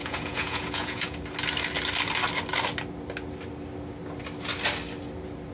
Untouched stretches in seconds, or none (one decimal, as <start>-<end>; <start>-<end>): 1.2-5.5

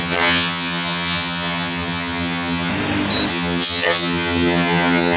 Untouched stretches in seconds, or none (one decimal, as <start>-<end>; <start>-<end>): 2.7-3.3

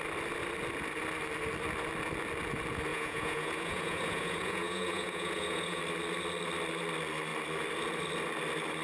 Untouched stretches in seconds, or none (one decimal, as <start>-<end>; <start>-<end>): 0.0-2.9; 5.8-8.8

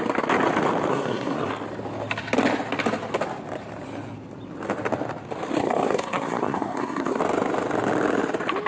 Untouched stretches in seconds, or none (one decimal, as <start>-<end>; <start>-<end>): 0.0-0.9; 1.5-5.6; 7.2-8.7

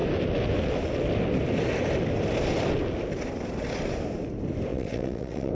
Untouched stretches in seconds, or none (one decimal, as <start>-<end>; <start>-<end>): 0.0-4.7

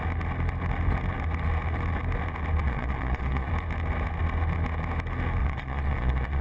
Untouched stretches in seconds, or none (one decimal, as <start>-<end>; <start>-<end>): 0.0-2.6; 3.5-5.4